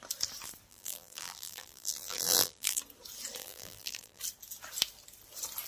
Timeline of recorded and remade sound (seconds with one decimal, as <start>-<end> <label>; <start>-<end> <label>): 0.0-0.7 recorded; 0.7-2.8 remade; 2.8-3.4 recorded; 3.4-4.2 remade; 4.2-5.7 recorded